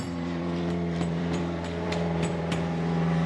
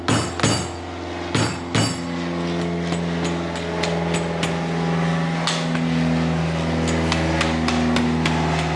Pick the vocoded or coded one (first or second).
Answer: first